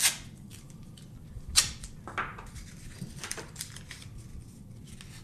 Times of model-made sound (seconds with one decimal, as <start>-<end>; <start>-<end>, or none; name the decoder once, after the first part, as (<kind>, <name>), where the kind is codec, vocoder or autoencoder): 0.5-1.6 (vocoder, BigVGAN v2); 2.3-3.8